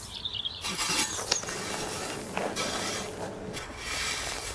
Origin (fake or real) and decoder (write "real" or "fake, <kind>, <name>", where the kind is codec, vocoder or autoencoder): fake, vocoder, BigVGAN v2